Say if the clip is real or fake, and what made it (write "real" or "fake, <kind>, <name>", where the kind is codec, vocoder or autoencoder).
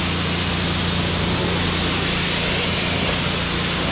real